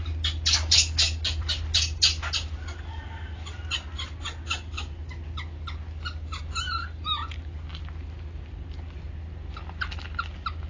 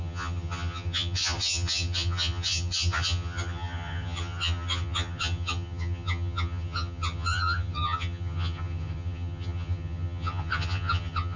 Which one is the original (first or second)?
first